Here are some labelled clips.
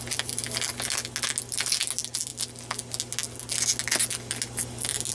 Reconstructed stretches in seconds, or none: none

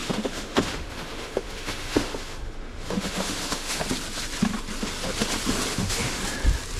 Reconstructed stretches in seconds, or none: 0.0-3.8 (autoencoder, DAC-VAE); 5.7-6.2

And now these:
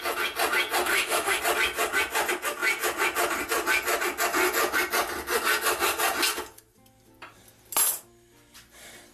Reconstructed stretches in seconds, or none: 0.9-1.4 (autoencoder, DAC-VAE)

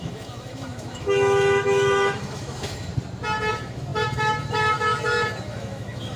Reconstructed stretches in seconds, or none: 0.0-2.9 (autoencoder, DAC-VAE); 3.5-6.2